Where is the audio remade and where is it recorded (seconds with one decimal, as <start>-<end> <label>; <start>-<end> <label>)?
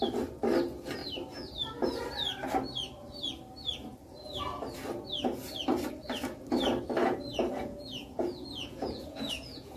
0.0-7.0 recorded; 7.0-9.8 remade